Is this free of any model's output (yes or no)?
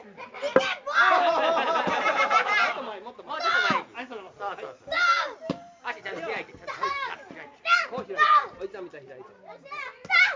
yes